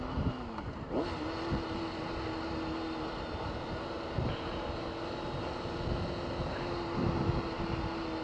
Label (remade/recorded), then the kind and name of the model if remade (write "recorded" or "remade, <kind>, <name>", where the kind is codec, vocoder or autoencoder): recorded